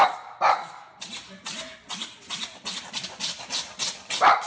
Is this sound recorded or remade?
recorded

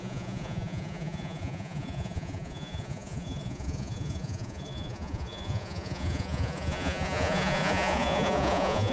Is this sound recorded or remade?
remade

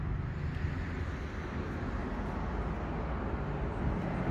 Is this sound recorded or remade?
recorded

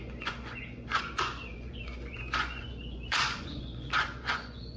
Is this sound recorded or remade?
remade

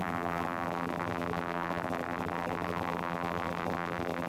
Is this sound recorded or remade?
remade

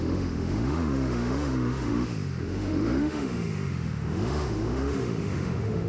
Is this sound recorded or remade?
remade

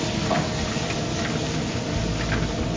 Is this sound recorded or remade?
recorded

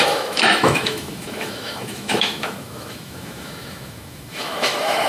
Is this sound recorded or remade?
remade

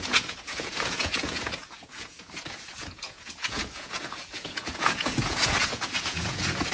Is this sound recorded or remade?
remade